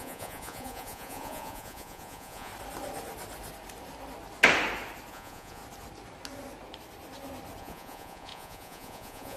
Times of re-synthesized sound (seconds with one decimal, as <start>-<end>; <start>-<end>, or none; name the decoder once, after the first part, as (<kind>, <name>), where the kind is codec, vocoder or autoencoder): 0.0-2.5 (vocoder, Vocos); 5.1-5.6; 7.6-9.4